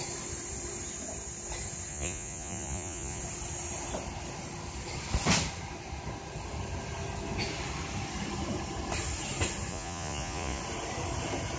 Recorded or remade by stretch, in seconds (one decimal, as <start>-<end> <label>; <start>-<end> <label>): 0.0-1.9 recorded; 1.9-3.2 remade; 3.2-9.7 recorded; 9.7-10.6 remade; 10.6-11.6 recorded